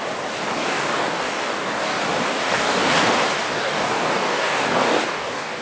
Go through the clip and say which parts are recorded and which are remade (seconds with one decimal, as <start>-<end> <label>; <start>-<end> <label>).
0.0-0.6 recorded; 0.6-2.0 remade; 2.0-2.4 recorded; 2.4-2.9 remade; 2.9-3.5 recorded; 3.5-5.6 remade